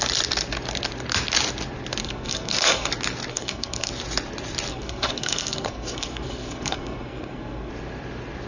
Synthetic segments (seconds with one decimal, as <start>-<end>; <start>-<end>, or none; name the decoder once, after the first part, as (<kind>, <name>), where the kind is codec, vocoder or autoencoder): 2.0-2.9 (codec, SNAC); 3.3-3.9; 4.7-7.7